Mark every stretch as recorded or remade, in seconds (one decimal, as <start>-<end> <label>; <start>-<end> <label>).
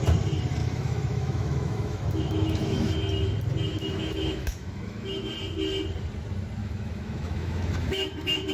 0.0-0.6 recorded; 0.6-2.9 remade; 2.9-3.7 recorded; 3.7-5.3 remade; 5.3-6.6 recorded; 6.6-8.5 remade